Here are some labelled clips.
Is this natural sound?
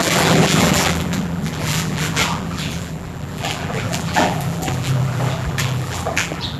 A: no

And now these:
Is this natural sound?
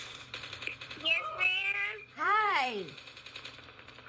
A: no